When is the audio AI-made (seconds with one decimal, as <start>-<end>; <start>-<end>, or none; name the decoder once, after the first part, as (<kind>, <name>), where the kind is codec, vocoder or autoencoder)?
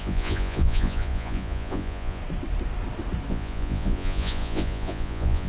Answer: 0.0-2.2 (vocoder, Vocos); 3.3-5.5